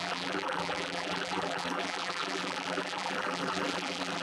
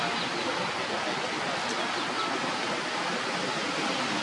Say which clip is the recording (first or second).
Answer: second